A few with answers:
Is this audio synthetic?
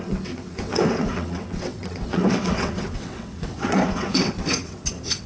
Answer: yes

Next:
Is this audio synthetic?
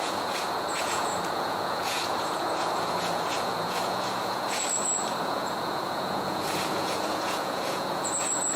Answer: yes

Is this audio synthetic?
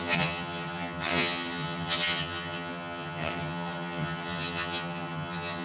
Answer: yes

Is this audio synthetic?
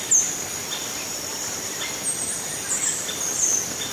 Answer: no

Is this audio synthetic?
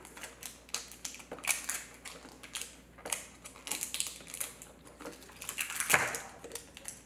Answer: no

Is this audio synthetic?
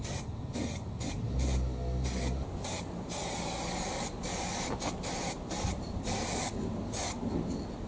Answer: no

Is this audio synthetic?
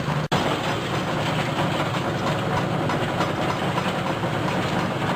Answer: no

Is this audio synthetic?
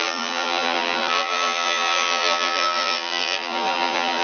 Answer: yes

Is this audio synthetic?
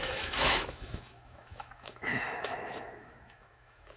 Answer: yes